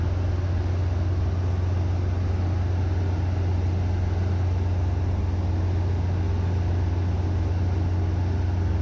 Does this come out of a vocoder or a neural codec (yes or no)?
no